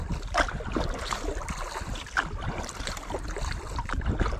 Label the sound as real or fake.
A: real